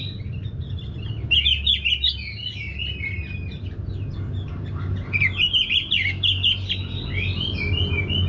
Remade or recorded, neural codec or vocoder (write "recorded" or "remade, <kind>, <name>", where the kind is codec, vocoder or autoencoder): recorded